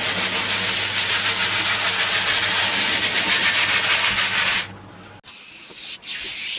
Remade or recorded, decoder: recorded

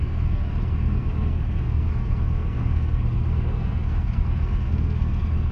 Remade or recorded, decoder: remade, codec, SNAC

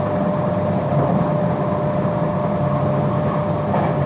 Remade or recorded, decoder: recorded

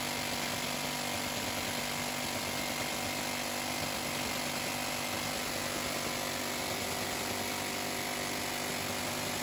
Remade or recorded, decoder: recorded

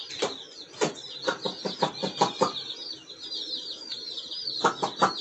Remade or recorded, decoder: recorded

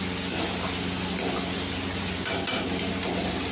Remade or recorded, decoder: recorded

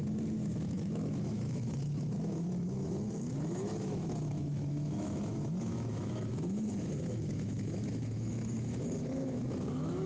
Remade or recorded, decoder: remade, autoencoder, DAC-VAE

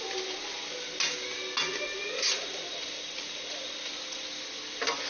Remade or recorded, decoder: recorded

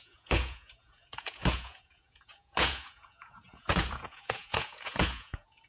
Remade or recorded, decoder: remade, vocoder, Vocos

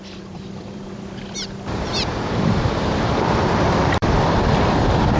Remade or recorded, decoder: remade, vocoder, BigVGAN v2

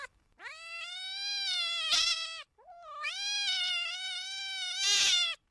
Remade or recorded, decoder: recorded